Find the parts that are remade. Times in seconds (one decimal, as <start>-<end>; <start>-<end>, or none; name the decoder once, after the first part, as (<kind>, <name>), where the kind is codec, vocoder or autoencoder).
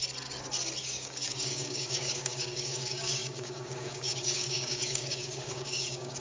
0.8-6.2 (codec, DAC)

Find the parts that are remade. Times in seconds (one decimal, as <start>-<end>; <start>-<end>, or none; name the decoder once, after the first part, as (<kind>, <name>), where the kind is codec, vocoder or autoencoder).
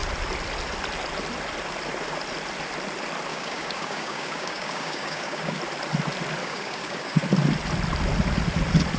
3.3-5.6 (codec, DAC); 6.4-7.2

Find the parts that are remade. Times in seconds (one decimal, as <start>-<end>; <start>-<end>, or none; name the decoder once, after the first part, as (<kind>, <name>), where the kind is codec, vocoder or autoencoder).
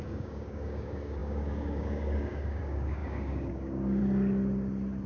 0.0-4.0 (codec, DAC)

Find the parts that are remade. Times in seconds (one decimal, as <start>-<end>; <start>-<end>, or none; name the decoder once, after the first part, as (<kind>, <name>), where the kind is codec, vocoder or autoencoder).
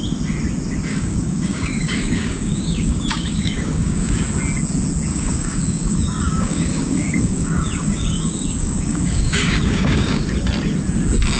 0.9-4.1 (codec, DAC); 5.1-10.2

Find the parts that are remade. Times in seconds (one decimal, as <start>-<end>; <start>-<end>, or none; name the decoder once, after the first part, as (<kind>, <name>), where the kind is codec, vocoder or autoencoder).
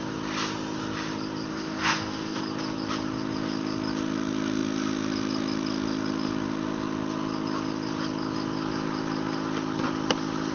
1.5-2.4 (codec, DAC)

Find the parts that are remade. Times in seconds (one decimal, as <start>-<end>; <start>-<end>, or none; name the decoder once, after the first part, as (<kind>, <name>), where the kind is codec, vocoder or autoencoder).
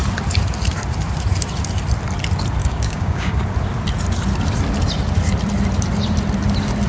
2.6-3.4 (codec, DAC)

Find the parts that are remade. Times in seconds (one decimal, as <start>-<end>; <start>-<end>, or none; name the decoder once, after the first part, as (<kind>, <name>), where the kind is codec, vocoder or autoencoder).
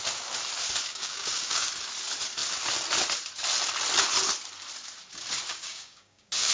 0.9-1.7 (codec, DAC); 5.5-6.5